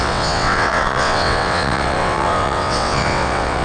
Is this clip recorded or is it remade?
remade